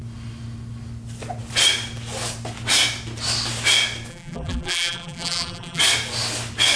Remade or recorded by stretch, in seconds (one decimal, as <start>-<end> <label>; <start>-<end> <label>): 0.0-4.1 recorded; 4.1-5.8 remade; 5.8-6.8 recorded

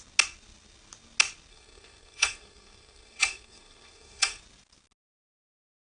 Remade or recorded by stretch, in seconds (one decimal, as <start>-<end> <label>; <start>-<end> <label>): 0.0-1.5 recorded; 1.5-4.4 remade; 4.4-5.8 recorded

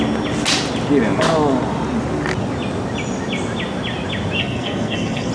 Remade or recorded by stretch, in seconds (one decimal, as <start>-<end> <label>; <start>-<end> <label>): 0.0-4.4 recorded; 4.4-5.3 remade

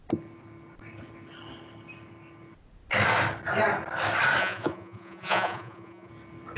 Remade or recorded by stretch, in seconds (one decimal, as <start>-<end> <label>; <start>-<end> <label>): 0.0-4.4 recorded; 4.4-6.1 remade; 6.1-6.6 recorded